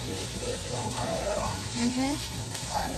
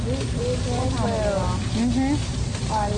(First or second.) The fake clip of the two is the first